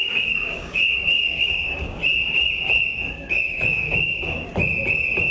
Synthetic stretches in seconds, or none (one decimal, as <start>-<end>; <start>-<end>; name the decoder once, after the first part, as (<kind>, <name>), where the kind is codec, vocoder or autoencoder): 0.0-2.0 (codec, DAC); 3.1-4.5